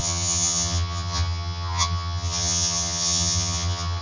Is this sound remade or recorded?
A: remade